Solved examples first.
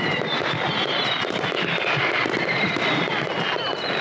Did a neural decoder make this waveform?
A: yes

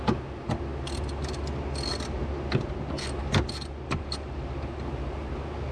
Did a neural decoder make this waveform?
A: no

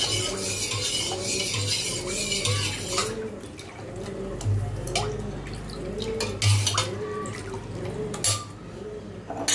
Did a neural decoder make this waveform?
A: no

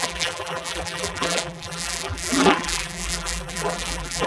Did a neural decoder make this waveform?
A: yes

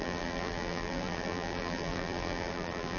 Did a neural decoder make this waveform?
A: yes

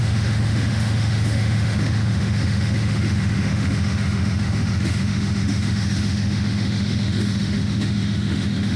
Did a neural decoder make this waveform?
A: yes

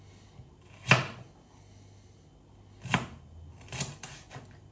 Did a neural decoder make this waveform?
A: no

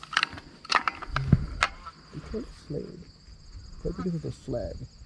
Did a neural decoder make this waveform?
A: no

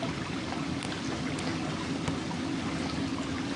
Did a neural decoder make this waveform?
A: no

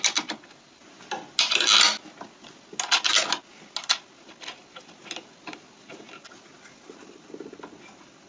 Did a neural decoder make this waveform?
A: no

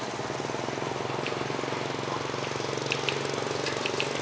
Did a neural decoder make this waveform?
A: no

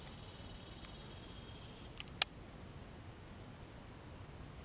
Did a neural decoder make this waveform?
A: no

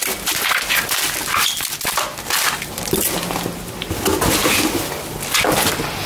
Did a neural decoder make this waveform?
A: no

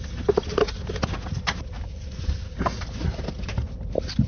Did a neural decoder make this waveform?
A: no